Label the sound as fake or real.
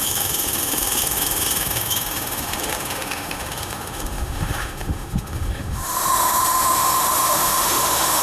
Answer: fake